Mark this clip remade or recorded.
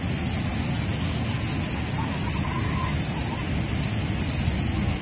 recorded